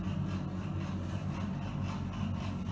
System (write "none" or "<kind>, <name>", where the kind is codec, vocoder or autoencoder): none